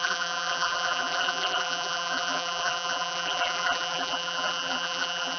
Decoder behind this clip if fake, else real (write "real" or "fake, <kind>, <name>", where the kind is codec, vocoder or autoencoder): fake, vocoder, BigVGAN v2